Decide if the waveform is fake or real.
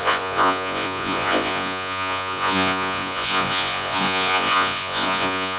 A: fake